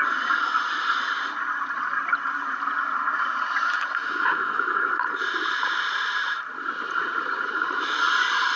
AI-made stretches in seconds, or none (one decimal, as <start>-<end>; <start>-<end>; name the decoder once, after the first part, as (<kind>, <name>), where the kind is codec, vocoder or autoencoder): 4.0-4.9 (autoencoder, DAC-VAE)